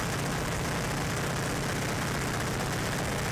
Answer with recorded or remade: recorded